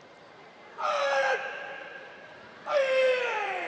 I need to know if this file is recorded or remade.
remade